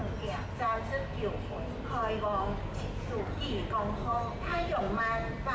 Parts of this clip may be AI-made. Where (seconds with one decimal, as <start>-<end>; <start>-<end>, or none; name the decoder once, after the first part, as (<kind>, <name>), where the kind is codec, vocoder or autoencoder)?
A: 4.5-5.0 (vocoder, Vocos)